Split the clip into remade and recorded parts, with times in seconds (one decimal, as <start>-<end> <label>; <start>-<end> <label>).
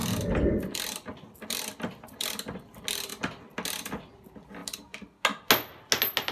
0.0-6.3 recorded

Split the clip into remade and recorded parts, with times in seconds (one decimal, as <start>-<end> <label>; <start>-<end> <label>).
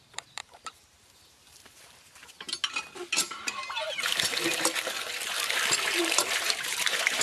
0.0-2.2 remade; 2.2-6.0 recorded; 6.0-7.2 remade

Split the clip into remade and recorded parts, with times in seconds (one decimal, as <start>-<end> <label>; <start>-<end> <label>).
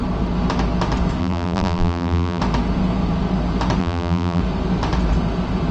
0.0-1.2 recorded; 1.2-2.4 remade; 2.4-3.8 recorded; 3.8-4.4 remade; 4.4-5.7 recorded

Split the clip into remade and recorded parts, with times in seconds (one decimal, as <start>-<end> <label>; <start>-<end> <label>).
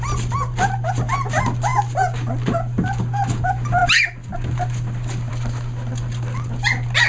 0.0-7.1 recorded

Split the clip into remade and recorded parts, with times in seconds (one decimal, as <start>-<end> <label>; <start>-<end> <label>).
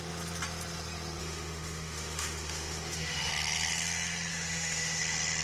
0.0-1.2 recorded; 1.2-3.3 remade; 3.3-4.3 recorded; 4.3-5.0 remade; 5.0-5.4 recorded